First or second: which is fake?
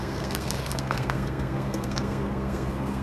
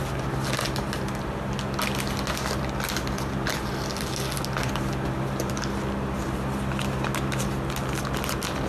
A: first